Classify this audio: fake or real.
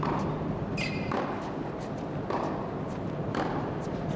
real